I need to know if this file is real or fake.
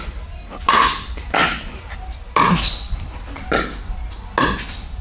real